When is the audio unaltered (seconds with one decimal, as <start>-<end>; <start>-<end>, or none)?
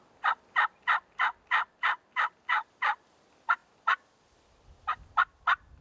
0.0-5.8